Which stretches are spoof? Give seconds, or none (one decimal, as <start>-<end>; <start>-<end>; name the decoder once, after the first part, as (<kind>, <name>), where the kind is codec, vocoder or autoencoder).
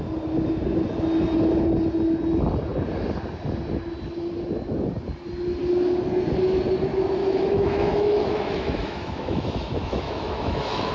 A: 7.2-10.9 (autoencoder, DAC-VAE)